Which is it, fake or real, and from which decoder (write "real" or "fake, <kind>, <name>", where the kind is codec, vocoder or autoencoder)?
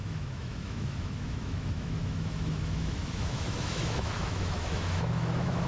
fake, autoencoder, DAC-VAE